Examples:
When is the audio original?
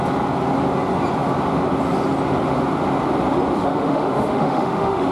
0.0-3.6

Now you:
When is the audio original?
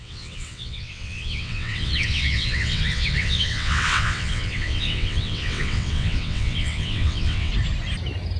7.5-8.4